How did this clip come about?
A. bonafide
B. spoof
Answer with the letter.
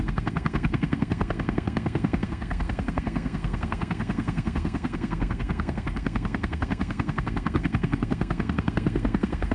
B